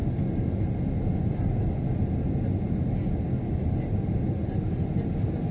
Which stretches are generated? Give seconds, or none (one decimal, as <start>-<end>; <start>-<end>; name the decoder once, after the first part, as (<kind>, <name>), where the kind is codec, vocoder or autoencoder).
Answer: none